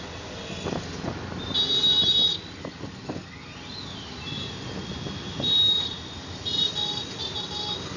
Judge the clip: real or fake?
real